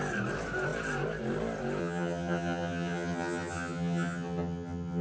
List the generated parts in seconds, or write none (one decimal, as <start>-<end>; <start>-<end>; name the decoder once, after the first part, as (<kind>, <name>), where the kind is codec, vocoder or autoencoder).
1.8-5.0 (vocoder, HiFi-GAN)